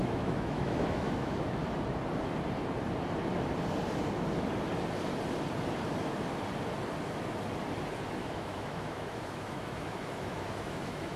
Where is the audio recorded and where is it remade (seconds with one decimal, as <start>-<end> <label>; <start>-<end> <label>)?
0.0-1.6 remade; 1.6-8.2 recorded; 8.2-11.2 remade